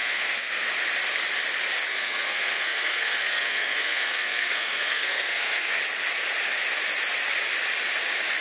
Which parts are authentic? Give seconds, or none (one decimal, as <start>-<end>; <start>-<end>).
0.7-1.9; 5.8-8.4